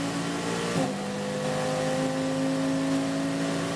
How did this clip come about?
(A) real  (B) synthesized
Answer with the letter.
A